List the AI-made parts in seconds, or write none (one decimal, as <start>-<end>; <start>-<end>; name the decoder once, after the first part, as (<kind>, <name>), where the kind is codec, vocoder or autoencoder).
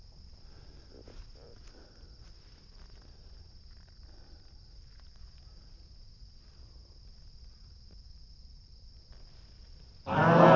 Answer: none